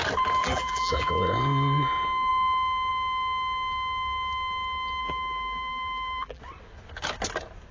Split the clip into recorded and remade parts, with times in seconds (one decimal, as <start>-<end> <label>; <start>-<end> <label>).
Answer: 0.0-0.4 recorded; 0.4-1.1 remade; 1.1-5.0 recorded; 5.0-6.4 remade; 6.4-7.7 recorded